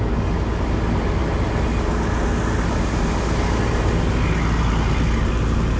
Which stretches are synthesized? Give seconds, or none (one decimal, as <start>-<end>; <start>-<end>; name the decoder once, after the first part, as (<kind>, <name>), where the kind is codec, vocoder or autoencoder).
none